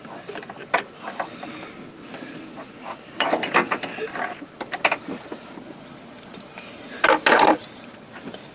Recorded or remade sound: recorded